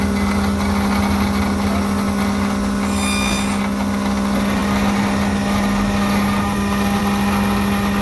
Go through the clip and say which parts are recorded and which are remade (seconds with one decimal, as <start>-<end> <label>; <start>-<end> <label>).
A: 0.0-8.0 recorded